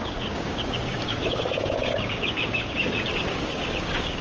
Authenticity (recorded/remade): remade